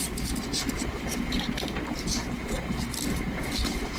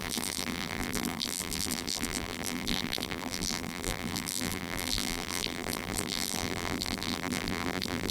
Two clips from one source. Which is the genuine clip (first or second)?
first